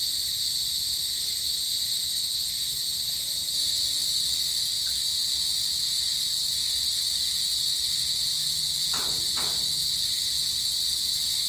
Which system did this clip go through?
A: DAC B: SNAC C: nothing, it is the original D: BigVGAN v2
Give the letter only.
C